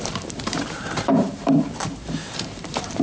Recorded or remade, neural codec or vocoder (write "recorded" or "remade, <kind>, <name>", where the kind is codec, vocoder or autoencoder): remade, vocoder, BigVGAN v2